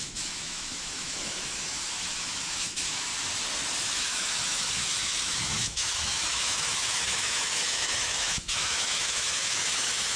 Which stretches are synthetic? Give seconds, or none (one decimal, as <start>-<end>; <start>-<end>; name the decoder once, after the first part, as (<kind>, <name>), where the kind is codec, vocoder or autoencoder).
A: 0.0-3.1 (autoencoder, DAC-VAE); 3.9-10.2